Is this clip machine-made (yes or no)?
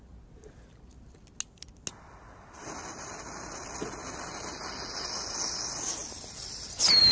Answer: no